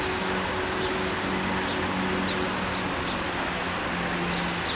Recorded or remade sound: recorded